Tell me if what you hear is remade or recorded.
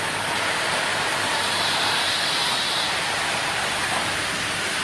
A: remade